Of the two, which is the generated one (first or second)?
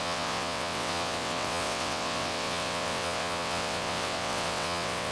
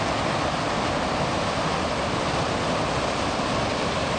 first